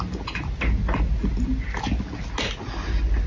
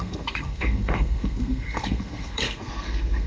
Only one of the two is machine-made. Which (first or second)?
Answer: second